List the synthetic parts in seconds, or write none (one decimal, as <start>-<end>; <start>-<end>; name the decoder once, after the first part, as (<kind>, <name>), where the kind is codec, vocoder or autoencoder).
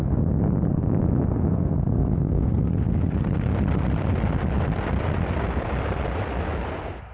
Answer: 1.5-2.7 (codec, SNAC)